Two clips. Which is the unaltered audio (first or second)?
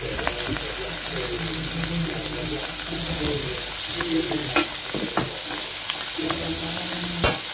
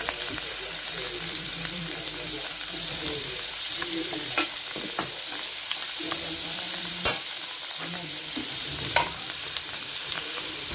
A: first